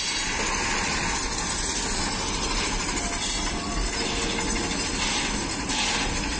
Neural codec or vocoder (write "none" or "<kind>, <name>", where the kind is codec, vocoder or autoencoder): none